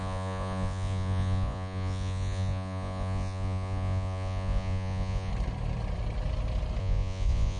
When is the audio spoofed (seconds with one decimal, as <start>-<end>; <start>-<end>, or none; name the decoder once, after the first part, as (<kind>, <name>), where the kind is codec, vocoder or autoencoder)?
0.0-5.3 (vocoder, Vocos); 6.8-7.6